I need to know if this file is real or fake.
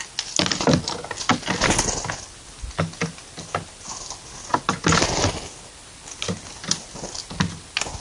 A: real